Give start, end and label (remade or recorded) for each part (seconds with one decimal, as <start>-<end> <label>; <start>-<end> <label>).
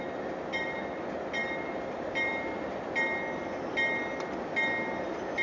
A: 0.0-5.4 recorded